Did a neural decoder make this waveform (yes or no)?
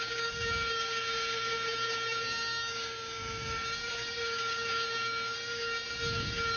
yes